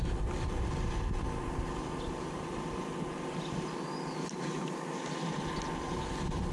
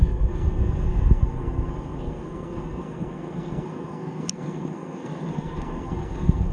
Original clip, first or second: first